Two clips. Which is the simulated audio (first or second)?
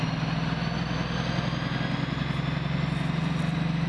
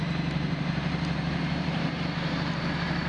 second